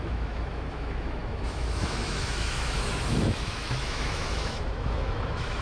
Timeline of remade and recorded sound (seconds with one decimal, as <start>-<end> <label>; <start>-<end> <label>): 0.0-5.6 remade